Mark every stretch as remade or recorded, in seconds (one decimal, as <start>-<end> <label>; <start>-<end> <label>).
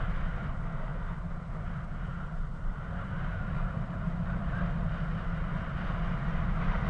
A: 0.0-0.9 recorded; 0.9-1.5 remade; 1.5-2.1 recorded; 2.1-4.8 remade; 4.8-6.9 recorded